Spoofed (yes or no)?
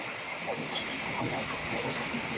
no